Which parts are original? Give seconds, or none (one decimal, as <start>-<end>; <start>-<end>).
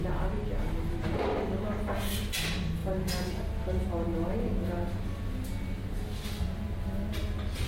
0.0-7.7